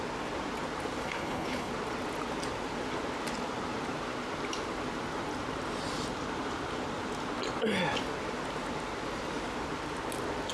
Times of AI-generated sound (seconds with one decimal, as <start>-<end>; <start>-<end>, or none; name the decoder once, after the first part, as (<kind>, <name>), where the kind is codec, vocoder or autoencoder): 1.0-1.7 (codec, HILCodec)